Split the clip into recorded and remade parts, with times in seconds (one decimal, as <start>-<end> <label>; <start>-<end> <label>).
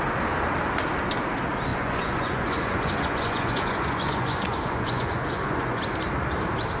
0.0-1.7 recorded; 1.7-5.8 remade; 5.8-6.8 recorded